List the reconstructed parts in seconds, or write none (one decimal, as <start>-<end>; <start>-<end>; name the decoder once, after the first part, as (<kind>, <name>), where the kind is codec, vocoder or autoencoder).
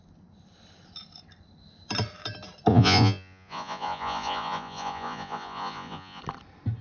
2.7-6.2 (vocoder, Vocos)